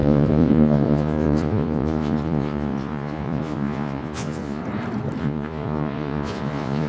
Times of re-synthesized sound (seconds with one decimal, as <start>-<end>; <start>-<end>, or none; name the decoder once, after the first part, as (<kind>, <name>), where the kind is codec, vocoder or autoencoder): 0.0-4.6 (vocoder, Vocos); 5.2-6.9